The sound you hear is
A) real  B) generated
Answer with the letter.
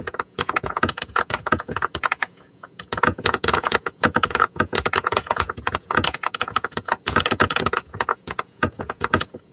B